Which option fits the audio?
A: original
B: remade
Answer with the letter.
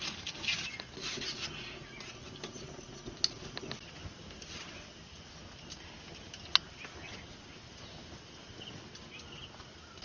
A